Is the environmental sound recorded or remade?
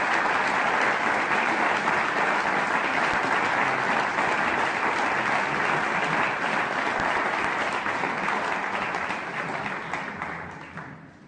recorded